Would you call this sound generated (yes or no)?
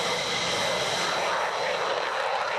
no